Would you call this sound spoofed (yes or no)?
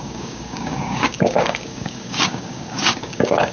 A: yes